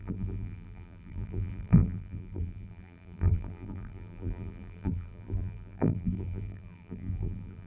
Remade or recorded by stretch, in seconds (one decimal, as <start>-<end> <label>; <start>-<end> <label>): 0.0-7.7 remade